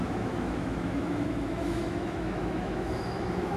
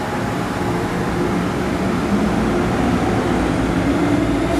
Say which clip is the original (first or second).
second